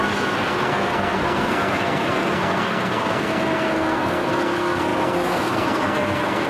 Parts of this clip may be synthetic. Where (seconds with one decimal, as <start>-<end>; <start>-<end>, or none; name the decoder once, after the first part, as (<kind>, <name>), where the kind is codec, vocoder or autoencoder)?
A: 0.0-6.5 (codec, SNAC)

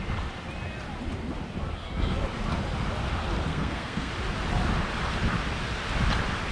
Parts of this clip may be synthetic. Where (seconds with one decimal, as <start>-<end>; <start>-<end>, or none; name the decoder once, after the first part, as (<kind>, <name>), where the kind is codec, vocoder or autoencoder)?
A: 3.5-4.1 (codec, SNAC)

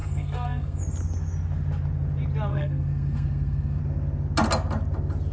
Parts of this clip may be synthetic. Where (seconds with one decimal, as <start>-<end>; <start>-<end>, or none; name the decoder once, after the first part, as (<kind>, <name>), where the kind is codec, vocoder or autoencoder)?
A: 0.0-0.8 (codec, SNAC); 2.5-3.8

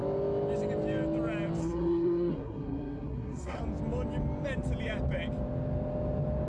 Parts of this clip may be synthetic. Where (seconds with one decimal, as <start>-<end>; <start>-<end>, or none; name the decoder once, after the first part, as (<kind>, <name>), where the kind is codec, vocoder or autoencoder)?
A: 1.6-3.6 (codec, SNAC)

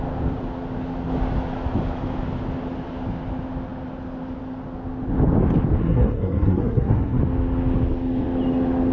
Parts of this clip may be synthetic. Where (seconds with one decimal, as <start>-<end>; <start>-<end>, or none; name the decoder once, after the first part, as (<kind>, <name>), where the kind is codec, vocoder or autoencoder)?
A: 5.8-7.2 (codec, SNAC)

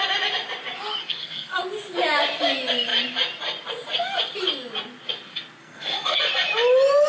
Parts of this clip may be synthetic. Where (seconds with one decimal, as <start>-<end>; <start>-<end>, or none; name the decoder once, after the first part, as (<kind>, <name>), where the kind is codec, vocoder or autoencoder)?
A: 1.0-1.6 (codec, SNAC); 5.6-6.2

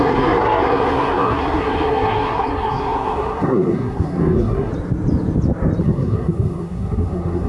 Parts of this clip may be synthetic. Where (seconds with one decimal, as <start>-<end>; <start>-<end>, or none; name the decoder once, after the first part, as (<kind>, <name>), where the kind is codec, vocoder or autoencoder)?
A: 0.0-4.7 (codec, SNAC); 5.8-7.5